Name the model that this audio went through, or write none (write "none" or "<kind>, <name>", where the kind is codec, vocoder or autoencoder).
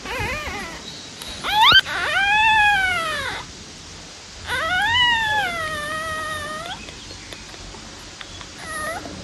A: none